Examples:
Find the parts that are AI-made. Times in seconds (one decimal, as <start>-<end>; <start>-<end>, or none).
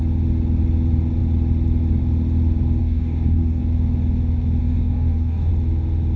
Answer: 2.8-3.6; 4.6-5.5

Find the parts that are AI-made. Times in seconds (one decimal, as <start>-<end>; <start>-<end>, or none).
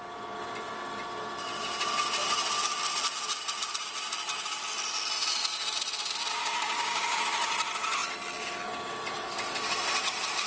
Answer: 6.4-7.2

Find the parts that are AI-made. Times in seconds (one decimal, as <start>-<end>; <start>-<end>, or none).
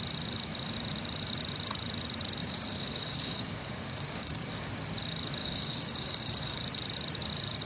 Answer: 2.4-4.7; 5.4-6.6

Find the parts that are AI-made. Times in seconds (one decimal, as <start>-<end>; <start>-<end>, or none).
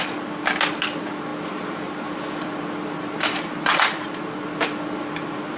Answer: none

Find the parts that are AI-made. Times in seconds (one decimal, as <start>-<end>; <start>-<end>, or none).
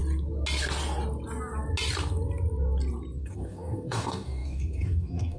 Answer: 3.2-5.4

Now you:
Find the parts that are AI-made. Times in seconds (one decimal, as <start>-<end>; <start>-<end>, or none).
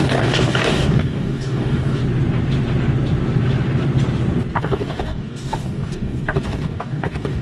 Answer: 0.0-2.0; 4.6-7.4